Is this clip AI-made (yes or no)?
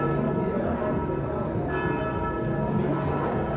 no